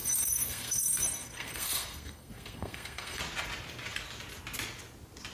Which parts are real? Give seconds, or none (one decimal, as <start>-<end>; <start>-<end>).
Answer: 3.2-5.3